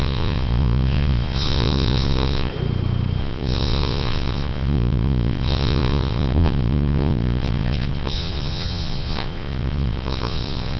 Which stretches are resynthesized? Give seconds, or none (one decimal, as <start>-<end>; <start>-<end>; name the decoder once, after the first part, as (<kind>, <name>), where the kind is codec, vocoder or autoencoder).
0.0-2.5 (vocoder, Vocos); 3.2-10.8